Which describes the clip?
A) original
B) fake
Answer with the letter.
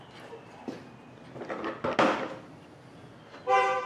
A